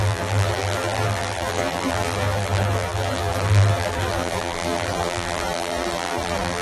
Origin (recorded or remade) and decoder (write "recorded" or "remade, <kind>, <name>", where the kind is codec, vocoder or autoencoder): remade, vocoder, BigVGAN v2